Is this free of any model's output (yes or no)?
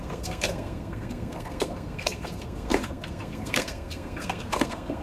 no